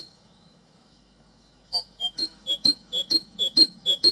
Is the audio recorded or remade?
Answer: remade